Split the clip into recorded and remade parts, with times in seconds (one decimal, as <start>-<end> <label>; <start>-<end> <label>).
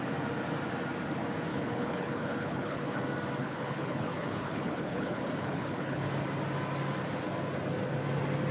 0.0-1.5 recorded; 1.5-3.0 remade; 3.0-3.4 recorded; 3.4-6.1 remade; 6.1-8.5 recorded